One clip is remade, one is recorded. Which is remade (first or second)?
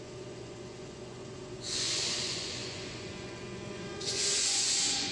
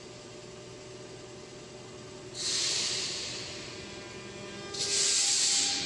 first